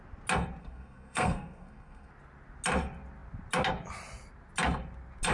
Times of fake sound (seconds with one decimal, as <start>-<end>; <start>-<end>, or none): 0.6-2.1